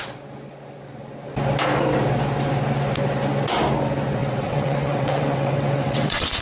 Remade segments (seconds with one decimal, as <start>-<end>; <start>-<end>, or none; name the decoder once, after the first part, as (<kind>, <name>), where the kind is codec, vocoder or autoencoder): 4.2-6.4 (vocoder, WaveNeXt)